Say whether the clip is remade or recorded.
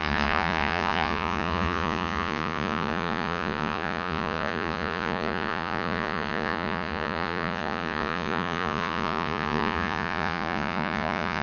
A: remade